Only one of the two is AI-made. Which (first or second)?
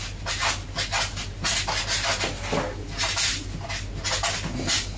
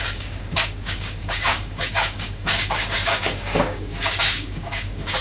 second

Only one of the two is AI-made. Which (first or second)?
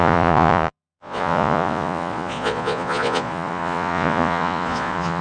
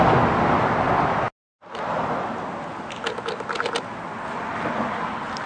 first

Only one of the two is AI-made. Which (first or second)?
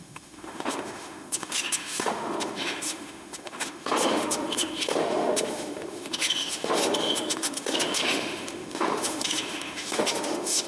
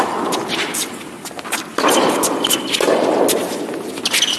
first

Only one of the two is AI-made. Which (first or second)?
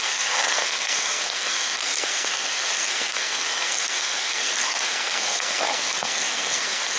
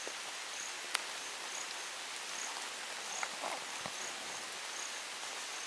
first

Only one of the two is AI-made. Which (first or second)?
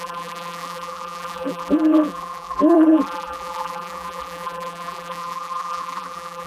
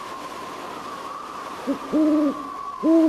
first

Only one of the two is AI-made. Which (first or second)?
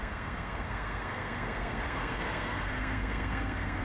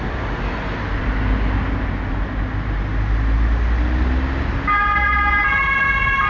first